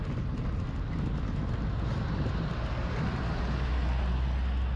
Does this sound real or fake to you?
real